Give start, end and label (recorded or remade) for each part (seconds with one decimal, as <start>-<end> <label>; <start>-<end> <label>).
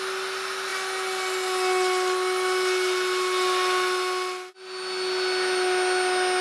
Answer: 0.0-6.4 recorded